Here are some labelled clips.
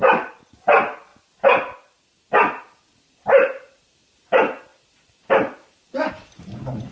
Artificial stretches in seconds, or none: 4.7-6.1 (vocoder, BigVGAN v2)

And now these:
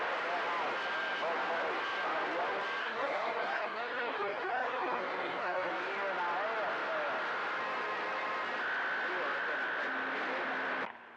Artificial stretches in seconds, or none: 2.8-5.7 (codec, SNAC)

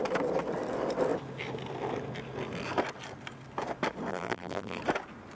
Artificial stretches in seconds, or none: 4.1-4.8 (vocoder, BigVGAN v2)

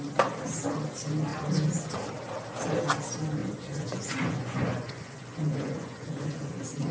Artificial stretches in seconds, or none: 3.4-6.9 (vocoder, Vocos)

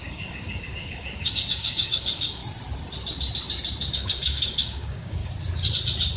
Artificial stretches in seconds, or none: 0.0-2.4 (codec, DAC); 3.9-5.2

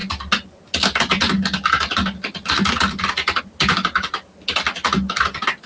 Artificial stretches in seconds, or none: none

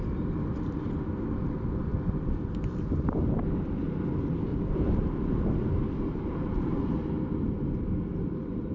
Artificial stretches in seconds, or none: 4.5-7.0 (vocoder, BigVGAN v2)